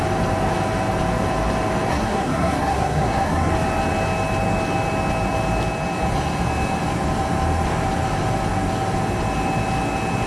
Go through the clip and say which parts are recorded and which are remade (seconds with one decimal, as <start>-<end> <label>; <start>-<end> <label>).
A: 0.0-1.9 recorded; 1.9-3.5 remade; 3.5-10.3 recorded